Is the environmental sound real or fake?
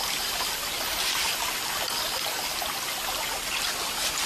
real